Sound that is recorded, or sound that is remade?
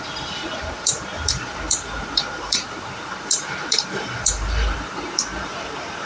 remade